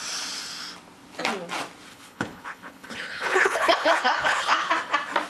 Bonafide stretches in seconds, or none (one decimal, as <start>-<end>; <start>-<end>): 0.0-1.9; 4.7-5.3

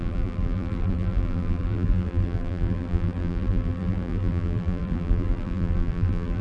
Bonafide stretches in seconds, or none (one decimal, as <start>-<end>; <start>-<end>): none

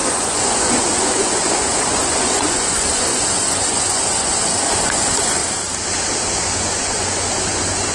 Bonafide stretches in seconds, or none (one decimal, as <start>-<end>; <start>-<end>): 5.4-6.3

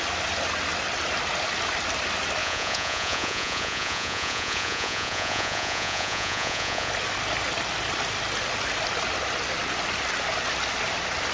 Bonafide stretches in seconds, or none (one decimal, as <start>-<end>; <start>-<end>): 0.0-2.4; 6.9-11.3

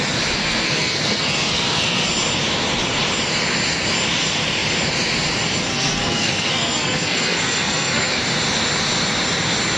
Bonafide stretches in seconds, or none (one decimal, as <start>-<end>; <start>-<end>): 0.0-0.4; 2.1-5.7; 8.2-9.8

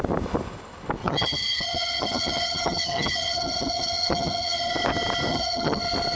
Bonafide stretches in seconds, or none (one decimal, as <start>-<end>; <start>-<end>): 0.0-1.0; 4.7-5.3; 5.8-6.2

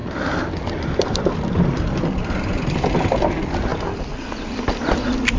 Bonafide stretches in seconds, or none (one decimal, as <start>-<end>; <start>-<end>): 0.0-5.4